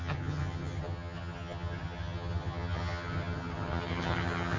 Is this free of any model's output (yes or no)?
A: no